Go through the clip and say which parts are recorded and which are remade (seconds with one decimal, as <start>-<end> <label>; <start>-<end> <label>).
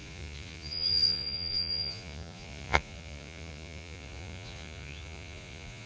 0.0-5.9 remade